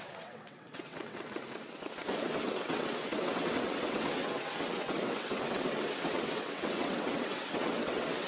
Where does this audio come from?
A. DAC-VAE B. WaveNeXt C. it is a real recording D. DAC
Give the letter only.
B